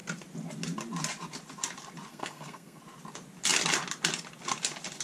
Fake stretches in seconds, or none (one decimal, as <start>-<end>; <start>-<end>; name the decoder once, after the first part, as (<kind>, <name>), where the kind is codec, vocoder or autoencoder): 2.1-2.8 (codec, SNAC)